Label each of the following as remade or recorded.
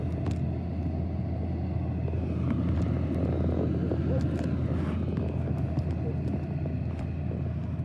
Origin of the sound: recorded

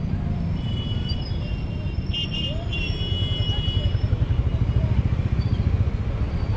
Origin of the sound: recorded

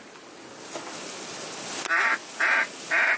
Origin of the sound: recorded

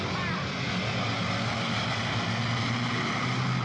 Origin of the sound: recorded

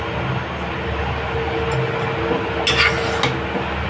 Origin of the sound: recorded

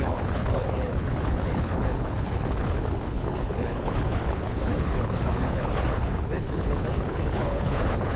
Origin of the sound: remade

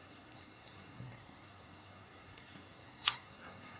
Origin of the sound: remade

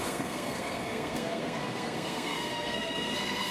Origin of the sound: remade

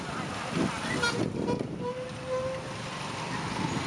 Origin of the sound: recorded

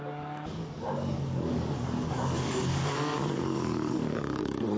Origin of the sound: remade